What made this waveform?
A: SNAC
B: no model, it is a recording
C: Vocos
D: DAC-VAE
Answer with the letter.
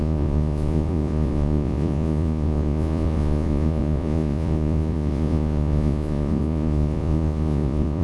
C